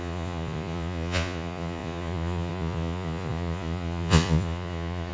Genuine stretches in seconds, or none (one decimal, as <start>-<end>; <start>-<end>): none